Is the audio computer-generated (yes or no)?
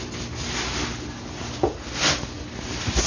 no